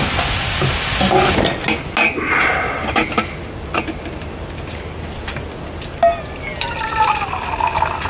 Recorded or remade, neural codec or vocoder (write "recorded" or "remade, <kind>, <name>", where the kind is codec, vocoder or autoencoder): recorded